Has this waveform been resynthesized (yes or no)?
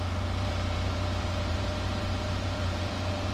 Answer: yes